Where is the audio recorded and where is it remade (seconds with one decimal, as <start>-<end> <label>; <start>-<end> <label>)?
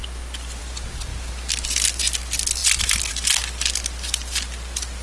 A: 0.0-5.0 recorded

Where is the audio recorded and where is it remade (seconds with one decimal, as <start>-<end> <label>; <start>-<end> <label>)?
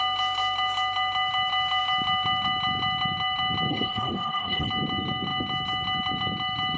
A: 0.0-3.7 recorded; 3.7-4.7 remade; 4.7-6.8 recorded